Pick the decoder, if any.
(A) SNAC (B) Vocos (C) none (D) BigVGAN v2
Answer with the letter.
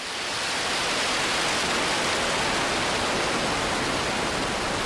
C